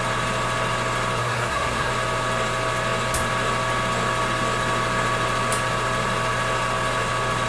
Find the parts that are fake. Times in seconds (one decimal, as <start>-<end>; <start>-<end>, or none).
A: 1.2-1.9